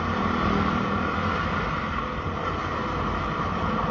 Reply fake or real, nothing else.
real